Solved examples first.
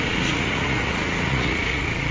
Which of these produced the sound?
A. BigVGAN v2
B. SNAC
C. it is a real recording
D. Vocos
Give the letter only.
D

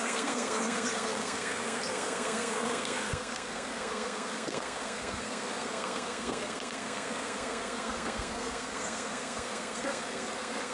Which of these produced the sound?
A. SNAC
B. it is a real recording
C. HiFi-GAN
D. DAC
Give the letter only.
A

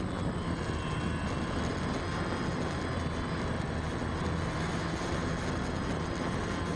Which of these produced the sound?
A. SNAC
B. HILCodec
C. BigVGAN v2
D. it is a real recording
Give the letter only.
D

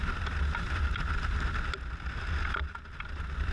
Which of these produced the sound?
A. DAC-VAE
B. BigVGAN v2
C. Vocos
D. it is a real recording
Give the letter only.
B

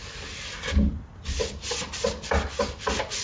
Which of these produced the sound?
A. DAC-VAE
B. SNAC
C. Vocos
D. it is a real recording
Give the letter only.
D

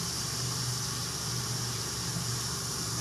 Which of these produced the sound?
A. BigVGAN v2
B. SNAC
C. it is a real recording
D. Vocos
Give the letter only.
A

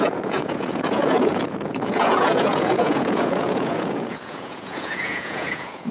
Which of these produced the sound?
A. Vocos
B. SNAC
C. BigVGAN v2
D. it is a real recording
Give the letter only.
A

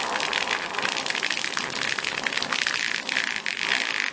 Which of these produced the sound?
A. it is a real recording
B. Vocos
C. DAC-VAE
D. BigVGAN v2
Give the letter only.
A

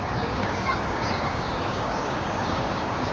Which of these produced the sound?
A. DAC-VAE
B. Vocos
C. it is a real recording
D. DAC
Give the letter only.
D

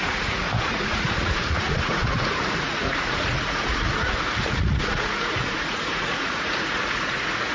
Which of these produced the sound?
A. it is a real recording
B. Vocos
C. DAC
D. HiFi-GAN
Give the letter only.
B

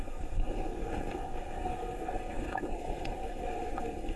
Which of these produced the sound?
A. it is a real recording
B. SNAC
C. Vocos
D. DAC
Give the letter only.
B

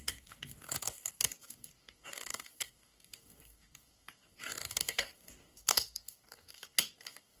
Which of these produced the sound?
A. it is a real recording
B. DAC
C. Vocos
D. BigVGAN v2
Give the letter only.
B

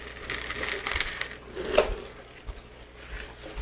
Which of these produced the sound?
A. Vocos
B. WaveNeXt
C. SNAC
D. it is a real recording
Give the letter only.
D